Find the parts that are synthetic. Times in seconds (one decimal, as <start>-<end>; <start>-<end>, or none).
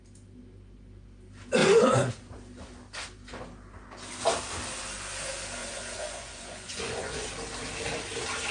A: 1.6-2.1; 5.6-7.3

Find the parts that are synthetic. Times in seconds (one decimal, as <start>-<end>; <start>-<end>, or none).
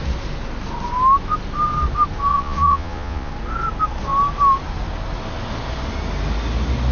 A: 2.3-3.3